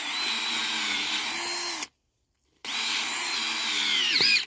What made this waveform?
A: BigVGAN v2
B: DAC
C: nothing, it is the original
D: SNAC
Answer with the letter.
C